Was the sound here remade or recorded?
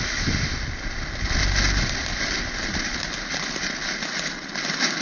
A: recorded